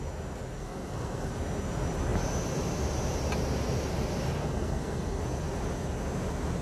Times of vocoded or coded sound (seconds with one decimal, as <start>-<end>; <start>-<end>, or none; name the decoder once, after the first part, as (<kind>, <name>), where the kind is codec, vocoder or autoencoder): 0.6-1.3 (codec, SNAC); 4.4-5.2